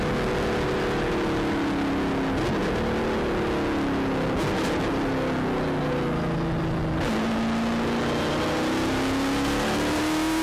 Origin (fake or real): real